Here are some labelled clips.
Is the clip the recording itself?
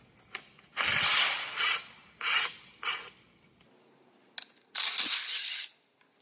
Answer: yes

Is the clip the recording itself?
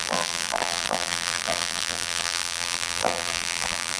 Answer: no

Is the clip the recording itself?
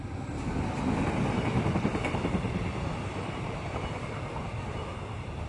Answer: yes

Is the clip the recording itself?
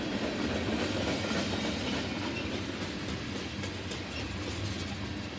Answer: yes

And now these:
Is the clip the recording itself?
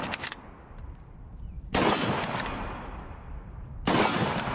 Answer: yes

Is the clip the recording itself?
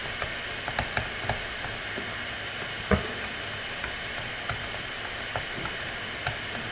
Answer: yes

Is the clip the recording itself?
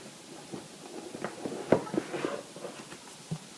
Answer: yes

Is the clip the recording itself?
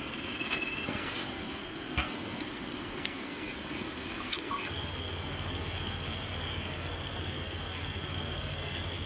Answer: no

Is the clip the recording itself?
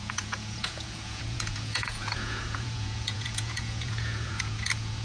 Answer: no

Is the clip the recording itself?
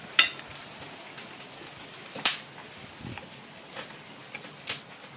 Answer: yes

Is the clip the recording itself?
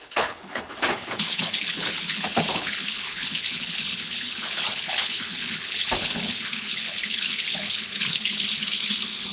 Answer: no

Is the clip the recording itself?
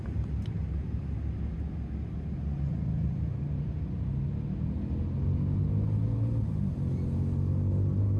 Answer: yes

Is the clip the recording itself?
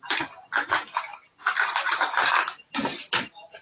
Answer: yes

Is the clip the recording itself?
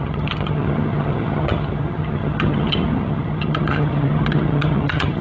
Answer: no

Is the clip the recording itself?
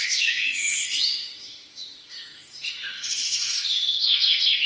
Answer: no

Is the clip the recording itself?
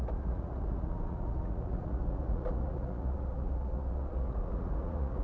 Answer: no